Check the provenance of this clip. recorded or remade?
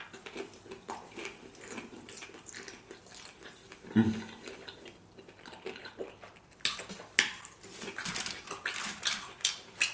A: recorded